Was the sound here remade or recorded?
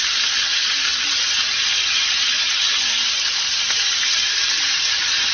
recorded